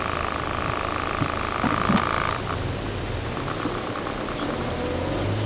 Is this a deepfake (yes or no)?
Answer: no